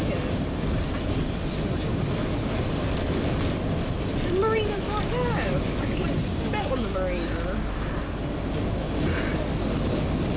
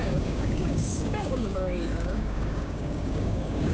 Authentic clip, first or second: first